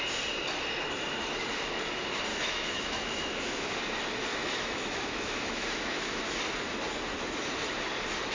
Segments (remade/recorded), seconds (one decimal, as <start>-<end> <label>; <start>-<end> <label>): 0.0-2.3 recorded; 2.3-3.7 remade; 3.7-4.3 recorded; 4.3-6.2 remade; 6.2-8.3 recorded